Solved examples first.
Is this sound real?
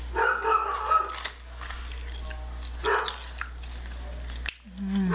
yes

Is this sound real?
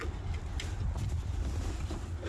yes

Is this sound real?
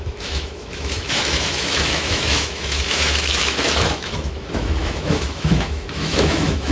no